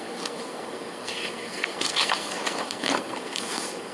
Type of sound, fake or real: fake